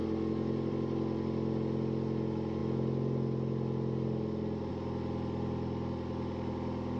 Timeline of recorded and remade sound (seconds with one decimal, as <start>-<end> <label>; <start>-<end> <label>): 0.0-7.0 recorded